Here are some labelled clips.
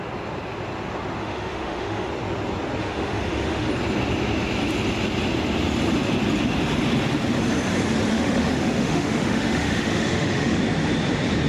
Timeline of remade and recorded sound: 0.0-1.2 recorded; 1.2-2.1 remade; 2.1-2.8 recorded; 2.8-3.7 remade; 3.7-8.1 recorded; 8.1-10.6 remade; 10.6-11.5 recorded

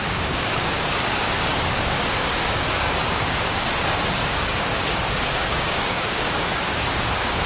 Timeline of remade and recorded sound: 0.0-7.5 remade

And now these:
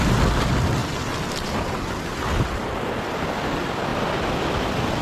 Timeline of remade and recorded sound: 0.0-5.0 recorded